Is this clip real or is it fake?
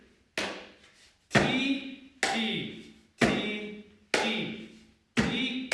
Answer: real